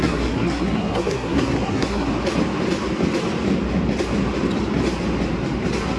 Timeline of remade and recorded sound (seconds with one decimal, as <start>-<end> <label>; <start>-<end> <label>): 0.0-2.1 remade; 2.1-6.0 recorded